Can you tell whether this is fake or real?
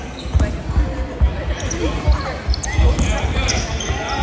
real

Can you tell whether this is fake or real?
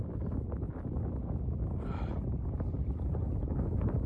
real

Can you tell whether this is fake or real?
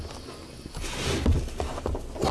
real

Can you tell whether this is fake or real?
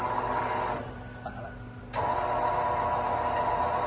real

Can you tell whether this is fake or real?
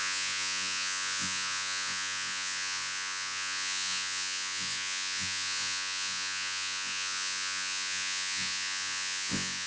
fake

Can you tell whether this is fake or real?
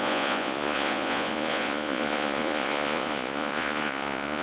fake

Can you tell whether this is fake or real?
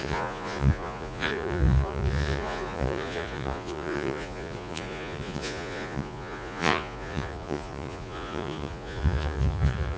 fake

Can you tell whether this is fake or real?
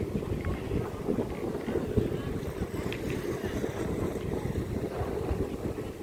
real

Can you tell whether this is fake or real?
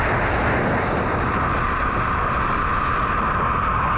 real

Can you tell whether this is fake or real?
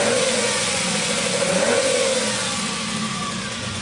fake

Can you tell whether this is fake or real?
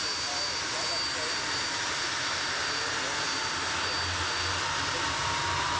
real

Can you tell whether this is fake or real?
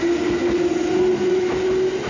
real